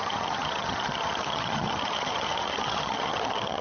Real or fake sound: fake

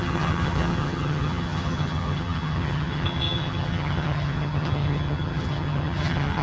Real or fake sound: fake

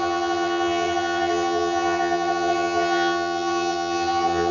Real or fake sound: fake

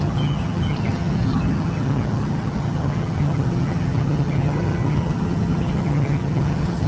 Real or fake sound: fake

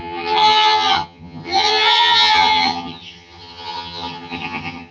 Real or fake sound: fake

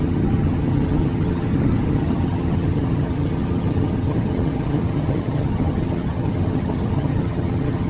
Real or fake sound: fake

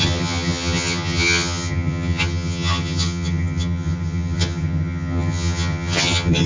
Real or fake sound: fake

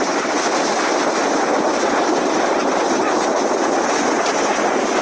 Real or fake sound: real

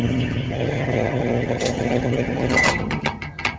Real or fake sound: fake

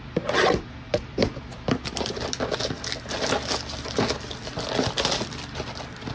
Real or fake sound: real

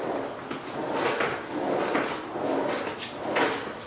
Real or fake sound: real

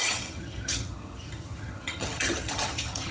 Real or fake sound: fake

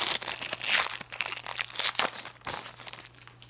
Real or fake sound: real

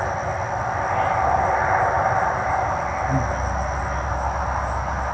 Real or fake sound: real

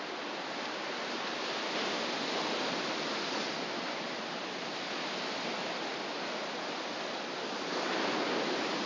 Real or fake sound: real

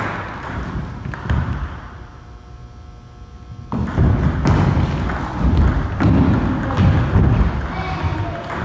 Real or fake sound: real